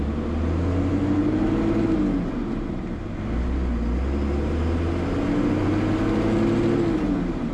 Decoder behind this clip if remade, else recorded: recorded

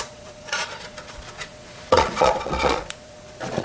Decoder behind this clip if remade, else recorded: remade, vocoder, Vocos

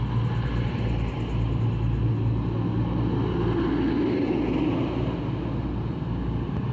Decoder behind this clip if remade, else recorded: recorded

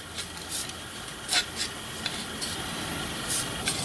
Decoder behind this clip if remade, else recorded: recorded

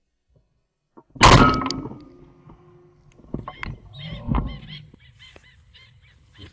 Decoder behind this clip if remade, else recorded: recorded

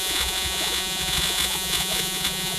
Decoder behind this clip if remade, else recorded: remade, vocoder, Vocos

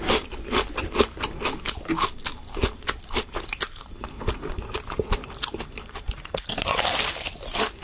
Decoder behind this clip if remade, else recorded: recorded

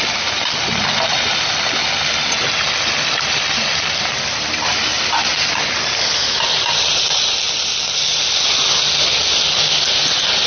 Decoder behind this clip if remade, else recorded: recorded